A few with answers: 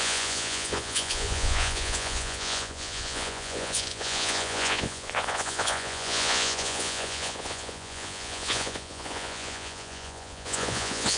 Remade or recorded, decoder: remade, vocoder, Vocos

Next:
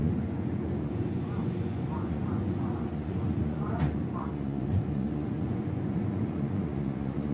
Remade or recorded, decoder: remade, vocoder, Vocos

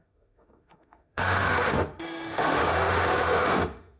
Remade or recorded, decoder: remade, autoencoder, DAC-VAE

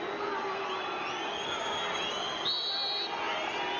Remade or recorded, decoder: recorded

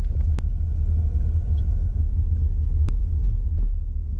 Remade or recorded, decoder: recorded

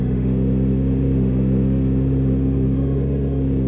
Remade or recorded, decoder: remade, autoencoder, DAC-VAE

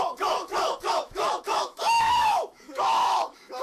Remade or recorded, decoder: remade, autoencoder, DAC-VAE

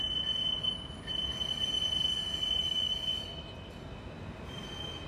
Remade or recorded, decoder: recorded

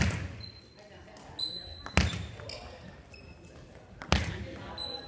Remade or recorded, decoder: recorded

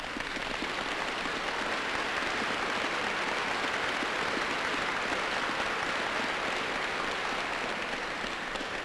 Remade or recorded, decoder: recorded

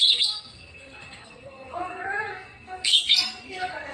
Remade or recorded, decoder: remade, codec, SNAC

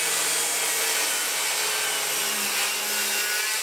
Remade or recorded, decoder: recorded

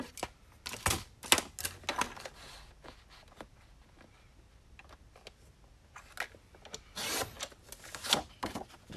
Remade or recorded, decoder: recorded